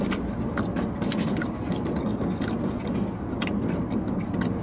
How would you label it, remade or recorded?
recorded